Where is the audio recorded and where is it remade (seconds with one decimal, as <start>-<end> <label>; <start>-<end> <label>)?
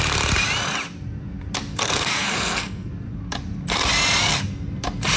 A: 0.0-1.7 recorded; 1.7-2.9 remade; 2.9-5.2 recorded